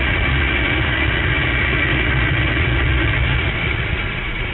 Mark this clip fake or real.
fake